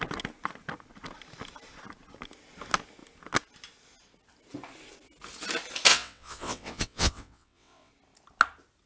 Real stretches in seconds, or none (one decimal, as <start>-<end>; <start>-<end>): 0.0-5.9; 7.9-8.9